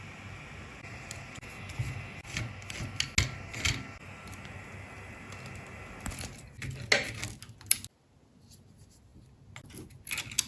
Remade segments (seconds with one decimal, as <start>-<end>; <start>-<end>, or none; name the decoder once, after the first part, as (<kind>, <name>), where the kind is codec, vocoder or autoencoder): none